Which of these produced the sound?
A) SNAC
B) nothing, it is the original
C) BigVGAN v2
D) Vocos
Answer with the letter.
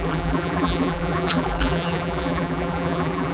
C